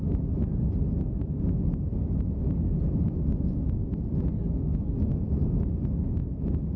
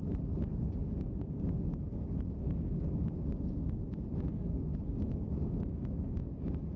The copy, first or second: second